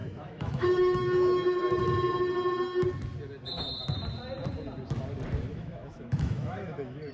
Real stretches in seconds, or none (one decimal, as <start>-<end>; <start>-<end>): 1.8-5.5